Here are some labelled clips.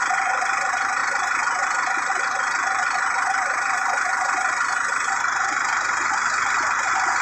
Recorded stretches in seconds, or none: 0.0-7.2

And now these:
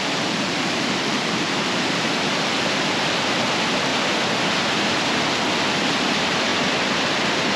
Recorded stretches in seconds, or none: 3.9-6.1; 6.5-7.0

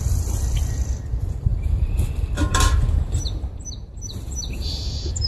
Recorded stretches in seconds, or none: 0.0-1.5; 2.0-2.5

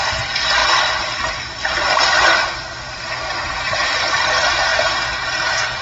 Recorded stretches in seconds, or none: 0.0-5.8

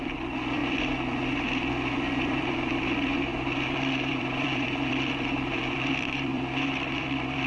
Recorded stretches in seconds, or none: none

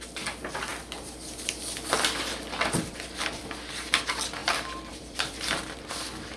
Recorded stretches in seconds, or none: 0.0-4.4

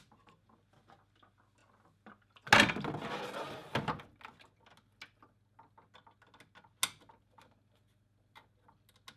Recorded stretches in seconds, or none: 0.0-9.2